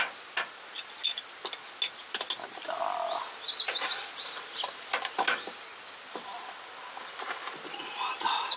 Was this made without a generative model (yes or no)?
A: yes